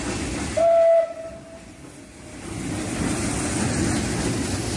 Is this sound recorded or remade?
recorded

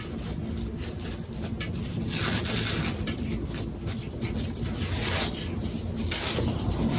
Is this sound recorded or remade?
recorded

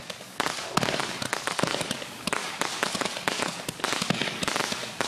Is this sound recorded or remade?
remade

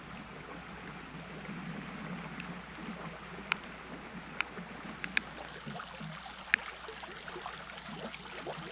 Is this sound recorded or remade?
recorded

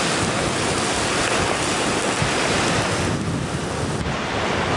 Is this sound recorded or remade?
recorded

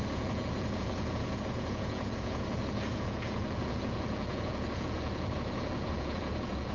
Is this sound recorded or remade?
remade